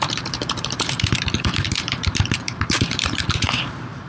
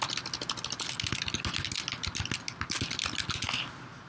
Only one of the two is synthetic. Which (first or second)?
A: first